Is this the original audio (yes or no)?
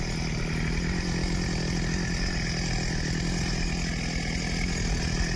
yes